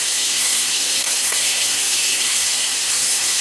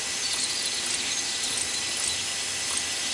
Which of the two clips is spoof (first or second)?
first